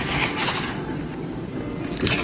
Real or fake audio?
real